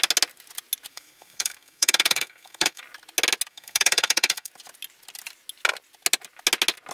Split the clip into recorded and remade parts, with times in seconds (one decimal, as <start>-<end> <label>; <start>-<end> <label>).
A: 0.0-0.9 recorded; 0.9-2.8 remade; 2.8-3.5 recorded; 3.5-4.5 remade; 4.5-6.9 recorded